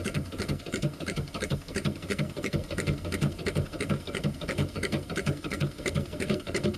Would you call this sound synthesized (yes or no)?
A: yes